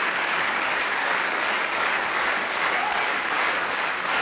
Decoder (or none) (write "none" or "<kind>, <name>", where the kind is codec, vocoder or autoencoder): codec, DAC